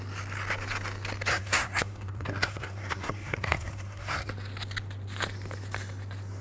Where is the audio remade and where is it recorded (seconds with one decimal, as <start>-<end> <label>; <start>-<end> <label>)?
0.0-1.3 recorded; 1.3-4.3 remade; 4.3-6.4 recorded